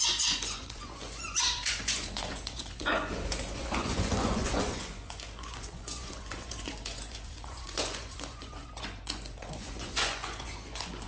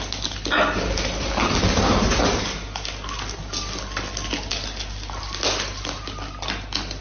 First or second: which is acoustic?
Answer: second